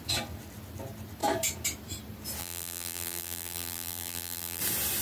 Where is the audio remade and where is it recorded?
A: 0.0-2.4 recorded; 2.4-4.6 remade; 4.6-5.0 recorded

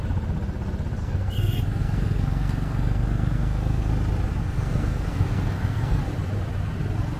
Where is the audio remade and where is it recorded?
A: 0.0-1.0 recorded; 1.0-3.9 remade; 3.9-4.4 recorded; 4.4-6.0 remade; 6.0-7.2 recorded

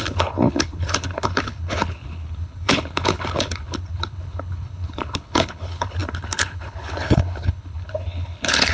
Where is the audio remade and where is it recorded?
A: 0.0-8.7 remade

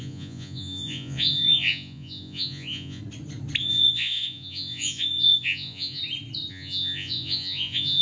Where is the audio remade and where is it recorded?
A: 0.0-3.0 remade; 3.0-3.6 recorded; 3.6-6.0 remade; 6.0-6.5 recorded; 6.5-8.0 remade

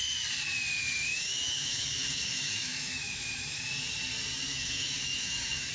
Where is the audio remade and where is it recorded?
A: 0.0-1.1 recorded; 1.1-3.7 remade; 3.7-4.5 recorded; 4.5-5.7 remade

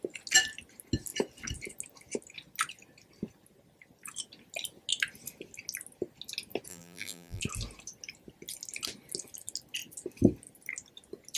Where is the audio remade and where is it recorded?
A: 0.0-6.7 recorded; 6.7-7.4 remade; 7.4-11.4 recorded

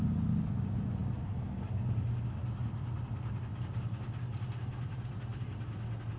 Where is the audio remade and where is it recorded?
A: 0.0-6.2 recorded

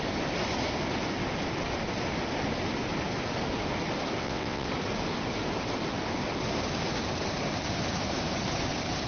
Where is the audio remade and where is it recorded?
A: 0.0-4.2 recorded; 4.2-4.7 remade; 4.7-9.1 recorded